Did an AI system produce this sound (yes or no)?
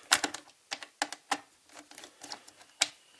no